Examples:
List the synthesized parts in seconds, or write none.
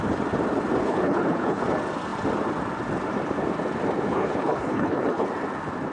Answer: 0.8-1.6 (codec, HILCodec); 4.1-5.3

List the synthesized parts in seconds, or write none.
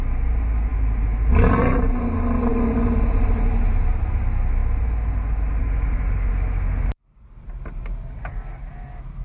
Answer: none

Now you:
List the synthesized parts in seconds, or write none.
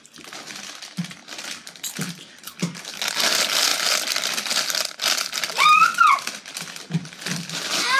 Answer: none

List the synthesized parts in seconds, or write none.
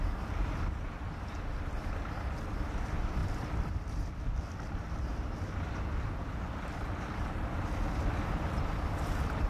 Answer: 3.2-4.1 (vocoder, BigVGAN v2)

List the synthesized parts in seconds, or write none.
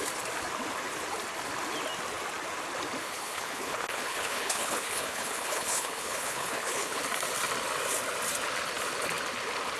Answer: 3.0-7.0 (codec, HILCodec)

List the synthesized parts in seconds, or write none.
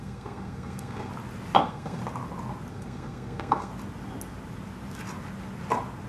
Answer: 0.0-1.1 (codec, SNAC); 1.6-2.0; 2.7-3.7